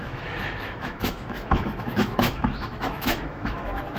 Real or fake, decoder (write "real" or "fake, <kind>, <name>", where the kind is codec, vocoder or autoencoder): fake, autoencoder, DAC-VAE